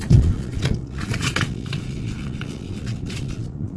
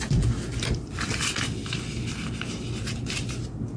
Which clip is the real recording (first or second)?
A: second